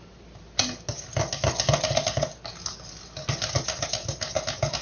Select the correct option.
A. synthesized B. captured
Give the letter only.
B